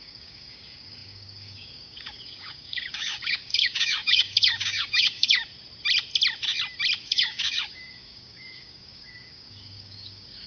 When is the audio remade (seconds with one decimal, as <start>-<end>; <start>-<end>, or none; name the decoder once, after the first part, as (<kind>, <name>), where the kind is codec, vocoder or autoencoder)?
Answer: 0.0-5.4 (codec, DAC); 7.0-10.5